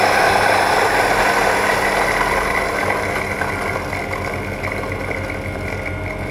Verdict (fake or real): real